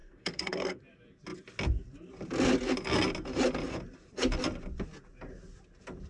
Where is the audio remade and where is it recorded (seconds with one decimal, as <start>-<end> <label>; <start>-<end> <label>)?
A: 0.0-0.8 remade; 0.8-6.1 recorded

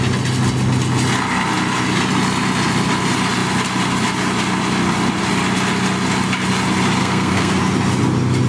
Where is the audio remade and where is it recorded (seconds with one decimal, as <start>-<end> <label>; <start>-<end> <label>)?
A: 0.0-7.0 recorded; 7.0-7.6 remade; 7.6-8.5 recorded